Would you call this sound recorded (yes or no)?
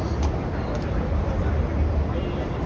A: yes